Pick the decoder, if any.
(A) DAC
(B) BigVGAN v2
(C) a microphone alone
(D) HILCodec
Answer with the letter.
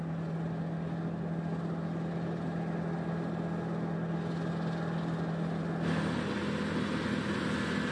C